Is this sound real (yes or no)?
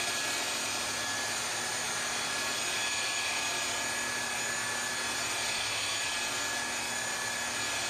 yes